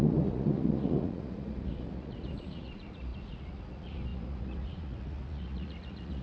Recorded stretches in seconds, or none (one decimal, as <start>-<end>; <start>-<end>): none